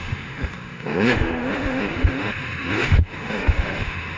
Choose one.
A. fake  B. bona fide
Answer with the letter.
A